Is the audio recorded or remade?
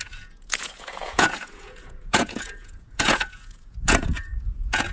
remade